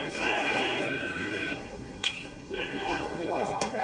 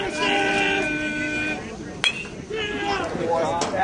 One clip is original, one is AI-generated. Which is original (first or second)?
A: second